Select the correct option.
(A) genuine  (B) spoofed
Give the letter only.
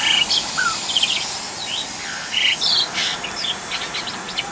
A